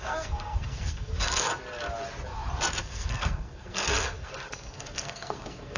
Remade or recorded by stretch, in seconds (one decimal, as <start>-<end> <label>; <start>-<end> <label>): 0.0-1.5 remade; 1.5-2.8 recorded; 2.8-5.8 remade